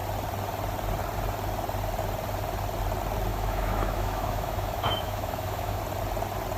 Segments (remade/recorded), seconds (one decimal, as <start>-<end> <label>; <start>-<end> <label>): 0.0-3.3 recorded; 3.3-5.8 remade; 5.8-6.6 recorded